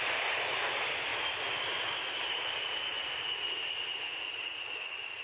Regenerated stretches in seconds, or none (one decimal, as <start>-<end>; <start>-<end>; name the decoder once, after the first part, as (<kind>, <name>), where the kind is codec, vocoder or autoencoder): 1.1-4.2 (vocoder, BigVGAN v2)